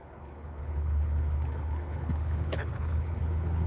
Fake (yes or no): yes